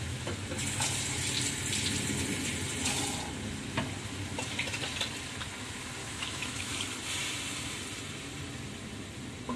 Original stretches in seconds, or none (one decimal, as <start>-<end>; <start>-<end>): 0.0-6.0; 6.7-9.6

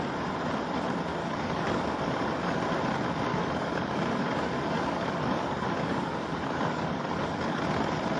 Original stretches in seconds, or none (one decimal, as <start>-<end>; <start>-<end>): 0.0-1.2; 2.6-3.3; 7.6-8.2

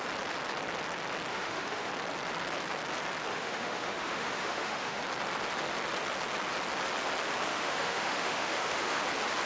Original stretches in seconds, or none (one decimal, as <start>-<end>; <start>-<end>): 0.0-1.3; 1.9-3.3; 5.0-7.5; 9.0-9.5

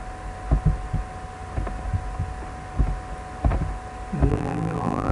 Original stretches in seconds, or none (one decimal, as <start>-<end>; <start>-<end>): 0.0-4.3

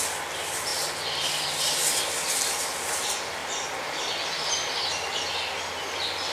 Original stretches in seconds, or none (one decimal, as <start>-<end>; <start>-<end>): 0.0-6.3

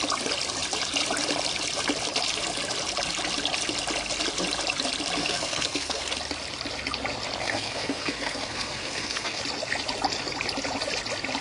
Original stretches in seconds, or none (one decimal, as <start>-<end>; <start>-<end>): 0.0-5.2; 6.1-7.4; 9.4-11.4

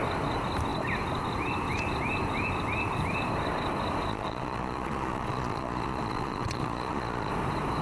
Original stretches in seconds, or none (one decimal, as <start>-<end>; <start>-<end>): 0.0-4.1; 7.3-7.8

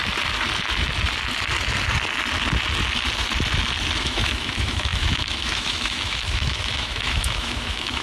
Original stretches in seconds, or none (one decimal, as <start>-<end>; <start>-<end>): 0.0-4.0